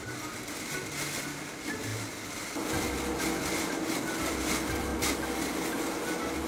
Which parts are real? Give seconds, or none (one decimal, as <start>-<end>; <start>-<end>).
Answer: 0.0-6.5